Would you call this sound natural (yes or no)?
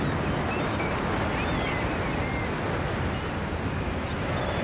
yes